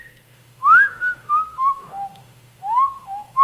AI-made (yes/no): yes